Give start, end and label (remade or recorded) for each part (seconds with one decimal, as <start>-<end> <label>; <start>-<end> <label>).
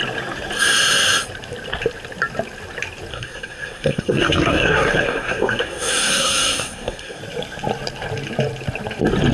0.0-3.1 recorded; 3.1-7.2 remade; 7.2-9.3 recorded